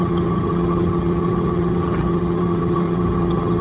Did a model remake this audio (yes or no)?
yes